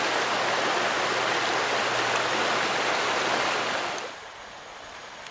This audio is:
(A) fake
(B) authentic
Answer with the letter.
B